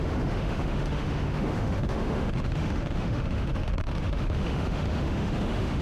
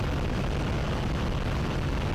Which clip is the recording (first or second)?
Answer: second